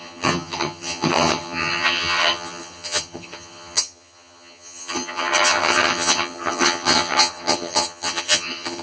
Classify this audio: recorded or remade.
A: remade